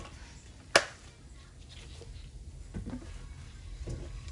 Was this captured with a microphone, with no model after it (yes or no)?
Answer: yes